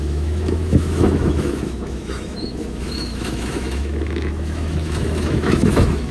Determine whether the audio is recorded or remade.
remade